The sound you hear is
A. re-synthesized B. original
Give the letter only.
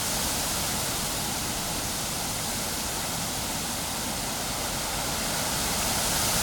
B